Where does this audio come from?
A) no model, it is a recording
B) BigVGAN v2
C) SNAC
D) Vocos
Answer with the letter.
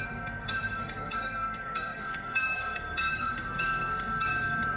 C